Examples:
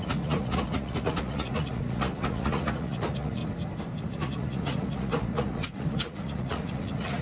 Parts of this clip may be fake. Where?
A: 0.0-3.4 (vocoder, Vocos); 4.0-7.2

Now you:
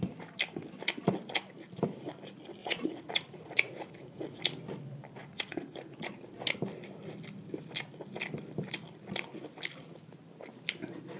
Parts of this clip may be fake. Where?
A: 2.6-4.4 (vocoder, Vocos); 5.2-6.1

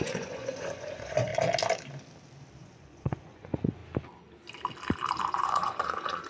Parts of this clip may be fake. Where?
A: 0.0-1.3 (vocoder, Vocos); 2.6-3.8; 5.2-6.3